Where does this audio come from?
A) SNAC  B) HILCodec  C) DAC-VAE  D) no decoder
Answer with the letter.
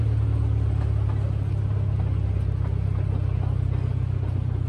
D